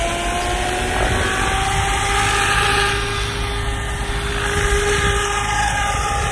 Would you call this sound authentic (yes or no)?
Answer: yes